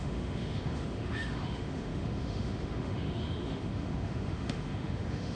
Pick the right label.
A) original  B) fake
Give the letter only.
B